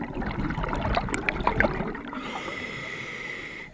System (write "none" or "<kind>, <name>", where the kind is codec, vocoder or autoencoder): none